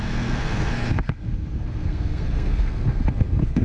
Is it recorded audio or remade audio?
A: remade